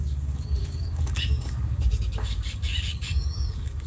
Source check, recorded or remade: remade